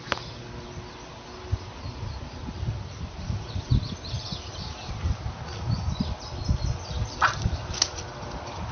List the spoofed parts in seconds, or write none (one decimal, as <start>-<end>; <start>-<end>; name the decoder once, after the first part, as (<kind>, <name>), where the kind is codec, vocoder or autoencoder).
3.2-3.7 (vocoder, Vocos)